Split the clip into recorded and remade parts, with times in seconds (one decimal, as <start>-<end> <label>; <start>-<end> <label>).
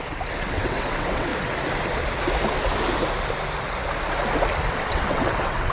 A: 0.0-1.3 remade; 1.3-4.7 recorded; 4.7-5.7 remade